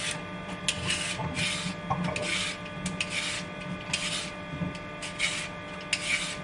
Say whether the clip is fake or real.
real